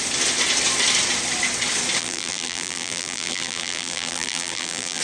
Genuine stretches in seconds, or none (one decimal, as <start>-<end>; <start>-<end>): 0.0-2.0